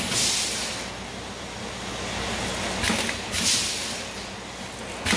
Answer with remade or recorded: recorded